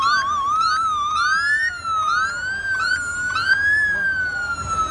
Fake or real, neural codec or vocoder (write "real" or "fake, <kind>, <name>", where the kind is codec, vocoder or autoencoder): real